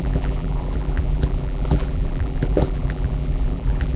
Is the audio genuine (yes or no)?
no